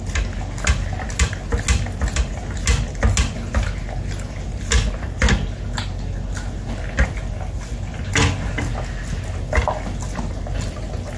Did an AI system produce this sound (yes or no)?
no